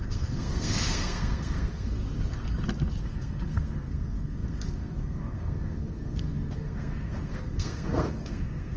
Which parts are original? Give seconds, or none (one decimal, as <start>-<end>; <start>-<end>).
2.0-3.0